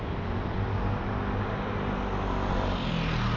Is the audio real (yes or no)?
yes